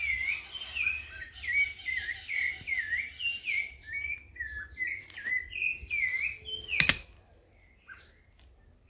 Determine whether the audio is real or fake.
real